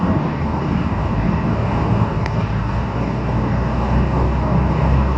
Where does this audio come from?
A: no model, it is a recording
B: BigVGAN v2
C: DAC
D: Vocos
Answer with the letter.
C